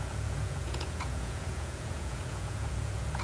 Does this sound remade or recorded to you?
remade